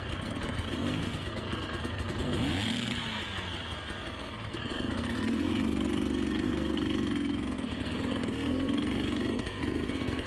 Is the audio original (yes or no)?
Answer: no